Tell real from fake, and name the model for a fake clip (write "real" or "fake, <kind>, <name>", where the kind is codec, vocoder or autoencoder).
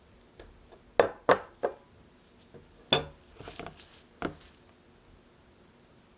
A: real